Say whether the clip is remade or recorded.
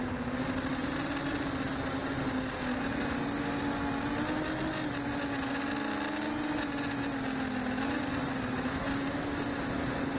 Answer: recorded